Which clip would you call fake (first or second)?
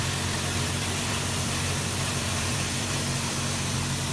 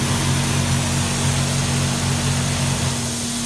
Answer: first